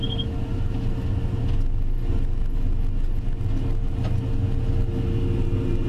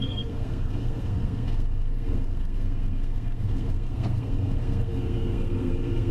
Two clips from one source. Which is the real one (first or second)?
first